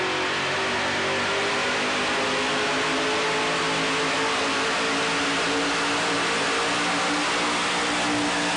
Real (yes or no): yes